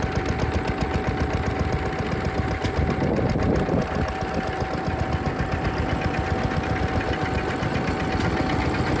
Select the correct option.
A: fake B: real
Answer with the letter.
B